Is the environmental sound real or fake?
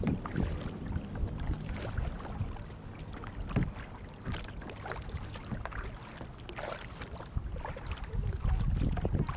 real